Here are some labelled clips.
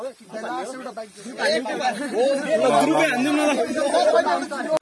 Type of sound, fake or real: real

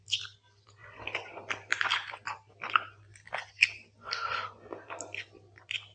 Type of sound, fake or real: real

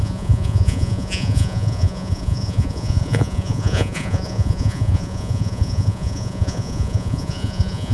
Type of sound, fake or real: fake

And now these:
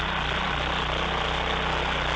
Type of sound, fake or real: real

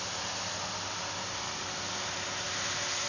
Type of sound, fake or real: real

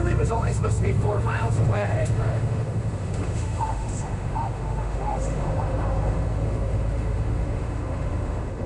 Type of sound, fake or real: fake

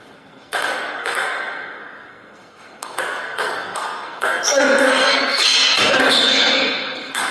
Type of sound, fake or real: fake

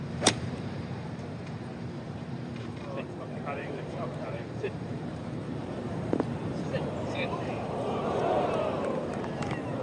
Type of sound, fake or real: fake